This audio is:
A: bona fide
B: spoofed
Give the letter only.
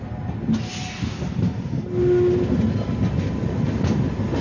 A